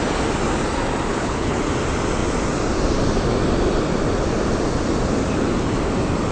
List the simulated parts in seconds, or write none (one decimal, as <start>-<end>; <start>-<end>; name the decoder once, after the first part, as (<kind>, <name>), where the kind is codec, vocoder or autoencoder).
1.1-1.6 (codec, HILCodec)